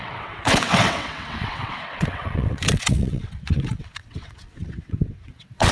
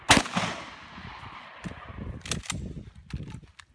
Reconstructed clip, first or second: first